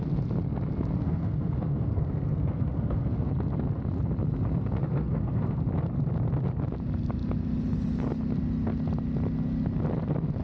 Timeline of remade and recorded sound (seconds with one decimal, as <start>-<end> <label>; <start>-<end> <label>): 0.0-1.0 recorded; 1.0-3.3 remade; 3.3-4.8 recorded; 4.8-5.6 remade; 5.6-10.4 recorded